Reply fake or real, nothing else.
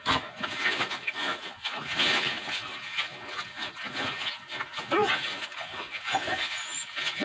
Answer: fake